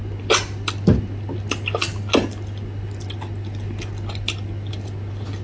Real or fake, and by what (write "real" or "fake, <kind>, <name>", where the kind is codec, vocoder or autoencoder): real